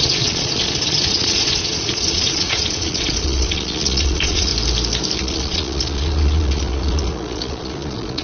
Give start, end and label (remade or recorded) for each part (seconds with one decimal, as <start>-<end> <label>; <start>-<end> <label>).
0.0-4.5 remade; 4.5-5.2 recorded; 5.2-8.2 remade